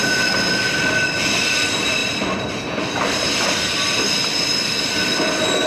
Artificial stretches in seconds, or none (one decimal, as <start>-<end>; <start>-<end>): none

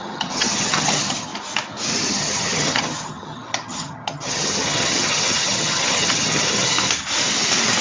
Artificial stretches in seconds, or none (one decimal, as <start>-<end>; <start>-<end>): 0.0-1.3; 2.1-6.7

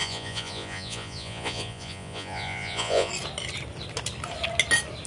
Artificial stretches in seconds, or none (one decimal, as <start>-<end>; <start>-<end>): 0.0-3.1